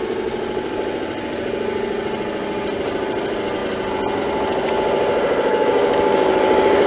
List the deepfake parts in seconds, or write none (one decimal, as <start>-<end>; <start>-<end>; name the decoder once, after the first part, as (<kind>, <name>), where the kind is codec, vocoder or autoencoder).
5.5-6.9 (codec, DAC)